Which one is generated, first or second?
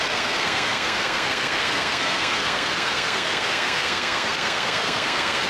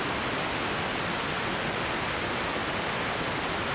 first